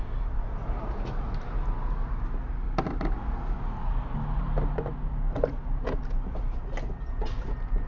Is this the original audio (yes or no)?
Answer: yes